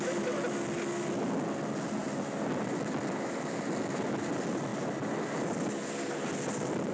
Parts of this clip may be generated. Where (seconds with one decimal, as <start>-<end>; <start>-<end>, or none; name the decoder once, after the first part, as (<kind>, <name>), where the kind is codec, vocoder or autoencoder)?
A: none